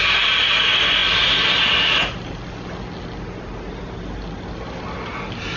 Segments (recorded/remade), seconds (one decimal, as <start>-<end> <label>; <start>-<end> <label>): 0.0-5.6 recorded